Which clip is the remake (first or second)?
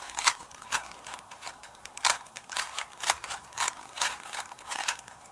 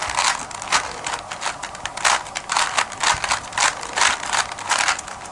first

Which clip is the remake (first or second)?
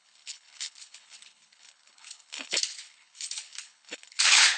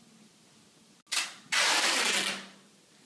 first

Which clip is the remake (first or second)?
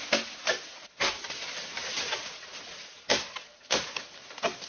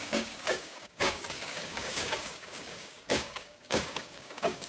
second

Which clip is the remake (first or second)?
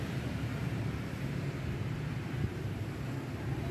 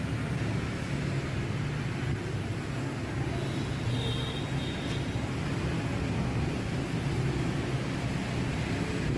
first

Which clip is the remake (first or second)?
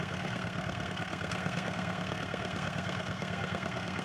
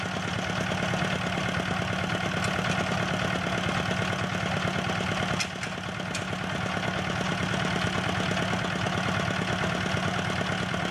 first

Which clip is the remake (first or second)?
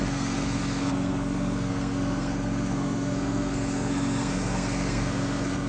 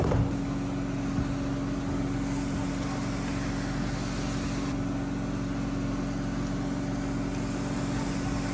first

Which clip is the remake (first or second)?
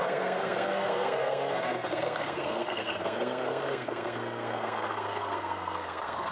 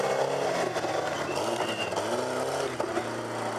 first